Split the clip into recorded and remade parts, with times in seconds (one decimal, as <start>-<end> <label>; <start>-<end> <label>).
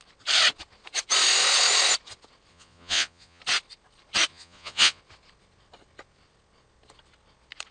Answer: 0.0-2.5 recorded; 2.5-3.4 remade; 3.4-4.3 recorded; 4.3-5.0 remade; 5.0-7.7 recorded